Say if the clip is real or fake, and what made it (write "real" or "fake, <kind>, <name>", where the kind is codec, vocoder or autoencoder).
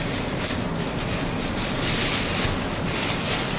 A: real